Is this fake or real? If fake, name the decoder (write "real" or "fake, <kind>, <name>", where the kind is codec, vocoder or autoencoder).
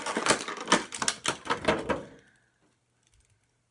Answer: real